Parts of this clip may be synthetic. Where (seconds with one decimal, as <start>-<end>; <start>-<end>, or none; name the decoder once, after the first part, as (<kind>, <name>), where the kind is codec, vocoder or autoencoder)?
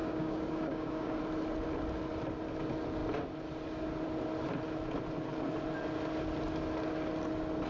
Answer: 0.0-1.2 (codec, DAC)